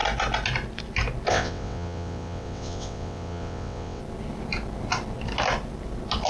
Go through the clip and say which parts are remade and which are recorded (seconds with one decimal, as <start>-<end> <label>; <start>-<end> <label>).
0.0-1.3 recorded; 1.3-4.0 remade; 4.0-6.3 recorded